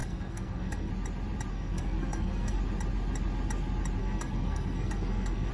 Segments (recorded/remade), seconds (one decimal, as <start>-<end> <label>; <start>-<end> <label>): 0.0-0.9 remade; 0.9-1.5 recorded; 1.5-2.6 remade; 2.6-4.0 recorded; 4.0-5.5 remade